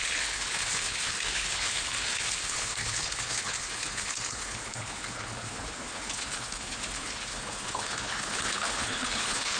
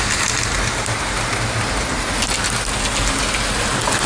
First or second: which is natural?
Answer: second